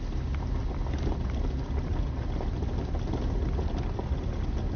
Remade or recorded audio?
recorded